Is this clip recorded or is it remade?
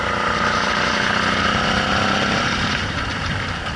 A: recorded